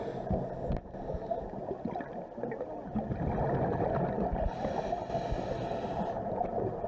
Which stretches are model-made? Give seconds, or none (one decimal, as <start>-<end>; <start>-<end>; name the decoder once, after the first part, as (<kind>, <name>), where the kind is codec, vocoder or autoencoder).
none